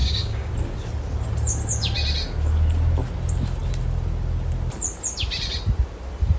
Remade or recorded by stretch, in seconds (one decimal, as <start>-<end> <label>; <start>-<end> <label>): 0.0-0.5 remade; 0.5-6.4 recorded